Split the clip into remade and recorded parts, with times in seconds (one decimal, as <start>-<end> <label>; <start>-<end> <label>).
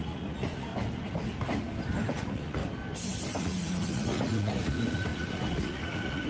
0.0-0.7 remade; 0.7-2.1 recorded; 2.1-2.6 remade; 2.6-3.4 recorded; 3.4-6.3 remade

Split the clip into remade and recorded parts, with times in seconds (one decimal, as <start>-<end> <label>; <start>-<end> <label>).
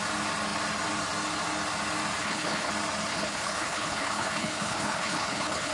0.0-2.2 recorded; 2.2-2.7 remade; 2.7-3.1 recorded; 3.1-5.7 remade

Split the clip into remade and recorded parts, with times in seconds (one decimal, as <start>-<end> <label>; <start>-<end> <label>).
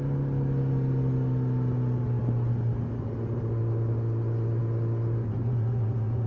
0.0-5.4 recorded; 5.4-6.3 remade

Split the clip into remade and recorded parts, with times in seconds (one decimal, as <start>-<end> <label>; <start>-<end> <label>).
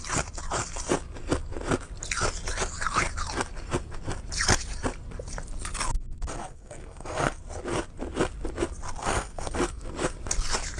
0.0-5.9 recorded; 5.9-7.4 remade; 7.4-9.0 recorded; 9.0-9.9 remade; 9.9-10.8 recorded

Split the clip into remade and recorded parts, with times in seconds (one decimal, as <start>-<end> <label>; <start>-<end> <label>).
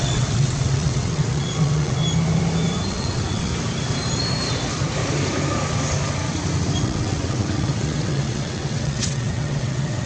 0.0-2.0 remade; 2.0-2.9 recorded; 2.9-3.5 remade; 3.5-6.8 recorded; 6.8-10.1 remade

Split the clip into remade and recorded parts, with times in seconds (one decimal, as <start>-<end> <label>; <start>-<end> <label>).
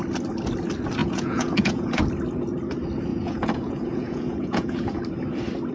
0.0-1.0 recorded; 1.0-2.0 remade; 2.0-3.1 recorded; 3.1-5.0 remade; 5.0-5.7 recorded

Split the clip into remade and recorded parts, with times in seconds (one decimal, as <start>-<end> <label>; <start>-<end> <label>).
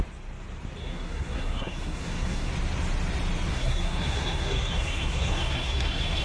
0.0-0.8 recorded; 0.8-2.5 remade; 2.5-3.5 recorded; 3.5-6.2 remade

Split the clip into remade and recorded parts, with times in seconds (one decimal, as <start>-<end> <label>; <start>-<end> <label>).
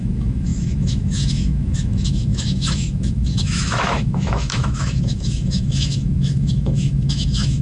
0.0-7.6 remade